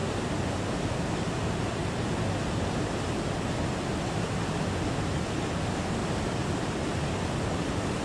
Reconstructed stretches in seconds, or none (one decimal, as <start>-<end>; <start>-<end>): none